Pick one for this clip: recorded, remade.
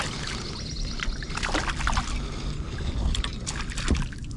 recorded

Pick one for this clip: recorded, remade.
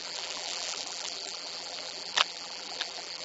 remade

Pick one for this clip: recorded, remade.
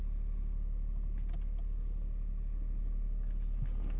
recorded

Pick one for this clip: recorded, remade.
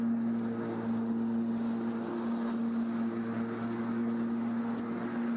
recorded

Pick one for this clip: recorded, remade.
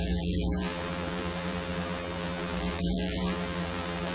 remade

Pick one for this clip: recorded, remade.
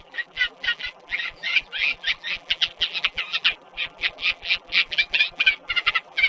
remade